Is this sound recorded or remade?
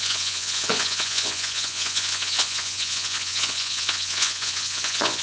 remade